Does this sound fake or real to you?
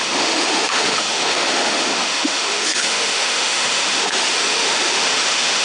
fake